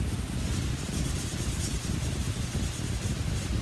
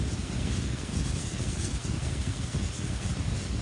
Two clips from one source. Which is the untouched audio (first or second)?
first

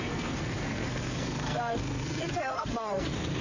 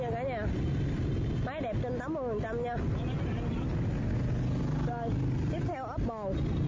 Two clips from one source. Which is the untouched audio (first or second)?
second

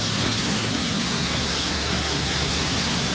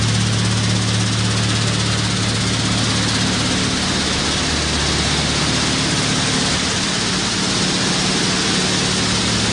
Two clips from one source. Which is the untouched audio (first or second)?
second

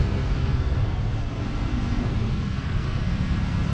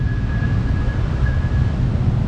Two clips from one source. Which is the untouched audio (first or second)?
second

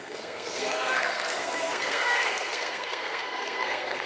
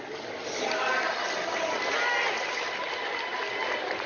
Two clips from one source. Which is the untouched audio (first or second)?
second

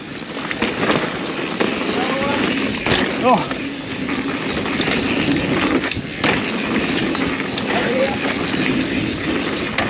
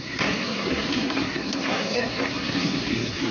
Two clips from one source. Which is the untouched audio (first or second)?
first